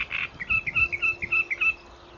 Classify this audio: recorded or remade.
recorded